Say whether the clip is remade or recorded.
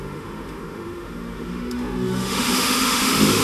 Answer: remade